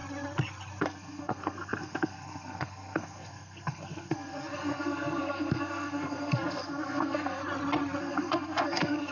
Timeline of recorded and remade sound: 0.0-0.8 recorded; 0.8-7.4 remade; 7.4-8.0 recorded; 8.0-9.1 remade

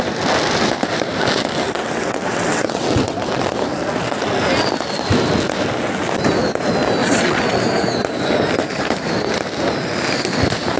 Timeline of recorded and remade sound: 0.0-1.8 recorded; 1.8-3.4 remade; 3.4-7.0 recorded; 7.0-7.6 remade; 7.6-10.8 recorded

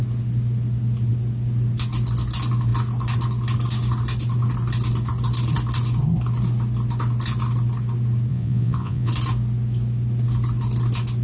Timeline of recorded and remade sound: 0.0-8.3 recorded; 8.3-9.1 remade; 9.1-11.2 recorded

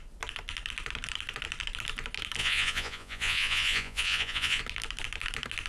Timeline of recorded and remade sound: 0.0-2.4 recorded; 2.4-4.6 remade; 4.6-5.7 recorded

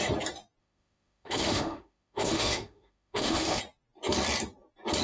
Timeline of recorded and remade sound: 0.0-0.6 recorded; 0.6-3.6 remade; 3.6-5.0 recorded

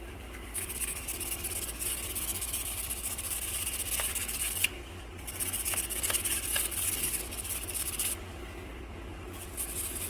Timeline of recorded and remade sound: 0.0-10.1 remade

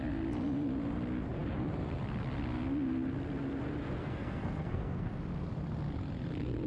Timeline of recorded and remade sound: 0.0-4.0 recorded; 4.0-5.2 remade; 5.2-6.7 recorded